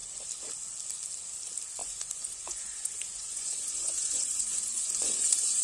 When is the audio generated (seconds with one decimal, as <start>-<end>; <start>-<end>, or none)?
1.8-5.6